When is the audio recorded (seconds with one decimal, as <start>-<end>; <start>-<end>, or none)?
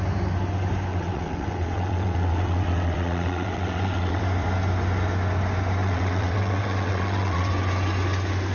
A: 0.0-0.9; 4.2-5.8; 7.5-8.5